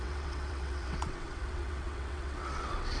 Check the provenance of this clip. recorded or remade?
remade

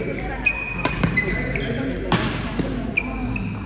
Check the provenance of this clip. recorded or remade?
recorded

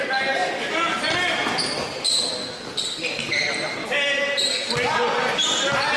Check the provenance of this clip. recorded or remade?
recorded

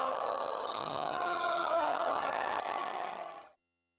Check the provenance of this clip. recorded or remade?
remade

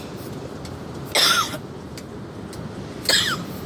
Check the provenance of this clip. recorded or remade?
recorded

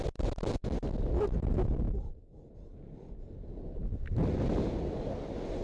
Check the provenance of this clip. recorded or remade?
recorded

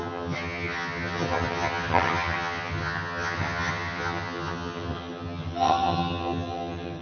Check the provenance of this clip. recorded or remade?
remade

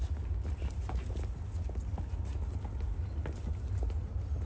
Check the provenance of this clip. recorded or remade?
recorded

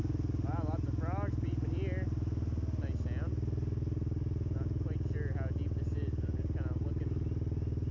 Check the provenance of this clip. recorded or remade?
recorded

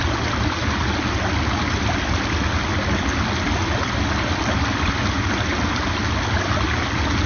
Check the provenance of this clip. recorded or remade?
recorded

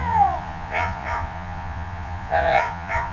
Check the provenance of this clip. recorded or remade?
remade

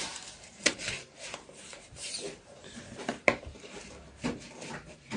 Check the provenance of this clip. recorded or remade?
remade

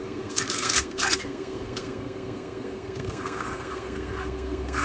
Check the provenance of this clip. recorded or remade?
remade